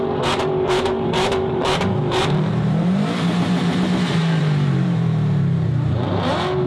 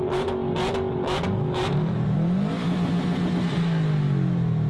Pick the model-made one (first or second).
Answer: first